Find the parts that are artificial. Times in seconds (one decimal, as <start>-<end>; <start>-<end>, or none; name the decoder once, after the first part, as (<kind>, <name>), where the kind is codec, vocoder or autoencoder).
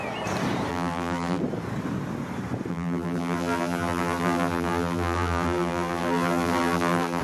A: 0.7-1.4 (vocoder, BigVGAN v2); 2.7-7.2